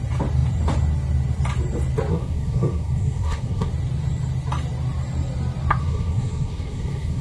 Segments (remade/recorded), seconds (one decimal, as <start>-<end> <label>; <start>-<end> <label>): 0.0-2.1 recorded; 2.1-3.7 remade; 3.7-5.8 recorded; 5.8-7.2 remade